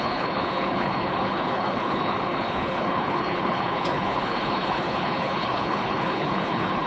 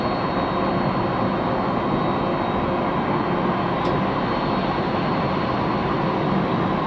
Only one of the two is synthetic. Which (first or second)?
first